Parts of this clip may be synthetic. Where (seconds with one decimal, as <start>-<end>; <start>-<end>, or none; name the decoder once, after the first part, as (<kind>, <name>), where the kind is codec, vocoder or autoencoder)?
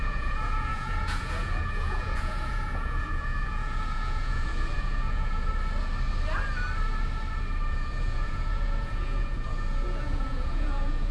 0.0-5.5 (vocoder, Vocos); 7.7-11.1